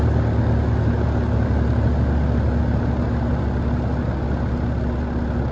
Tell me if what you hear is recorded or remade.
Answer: recorded